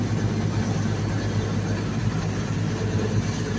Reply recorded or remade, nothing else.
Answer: recorded